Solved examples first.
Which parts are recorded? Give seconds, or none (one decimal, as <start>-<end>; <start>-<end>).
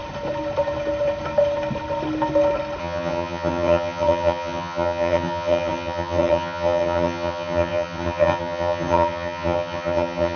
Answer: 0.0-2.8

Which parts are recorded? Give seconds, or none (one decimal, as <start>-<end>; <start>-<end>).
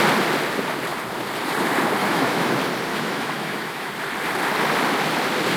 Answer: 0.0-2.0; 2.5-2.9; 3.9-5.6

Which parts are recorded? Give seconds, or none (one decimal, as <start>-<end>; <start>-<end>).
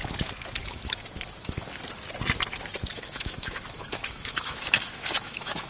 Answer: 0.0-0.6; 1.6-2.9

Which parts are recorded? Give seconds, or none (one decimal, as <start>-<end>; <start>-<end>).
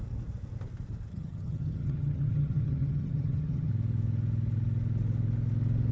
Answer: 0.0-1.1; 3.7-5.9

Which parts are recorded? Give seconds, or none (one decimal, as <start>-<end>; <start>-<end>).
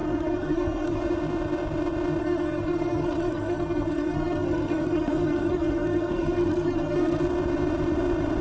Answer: 1.0-2.2; 7.2-8.4